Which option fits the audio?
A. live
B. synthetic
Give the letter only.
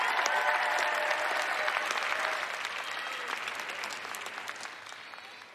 A